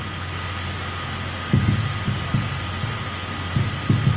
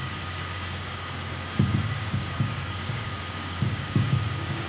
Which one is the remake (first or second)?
second